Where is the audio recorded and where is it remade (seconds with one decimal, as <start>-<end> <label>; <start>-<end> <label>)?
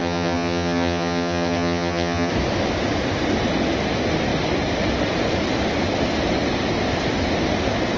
0.0-2.3 remade; 2.3-8.0 recorded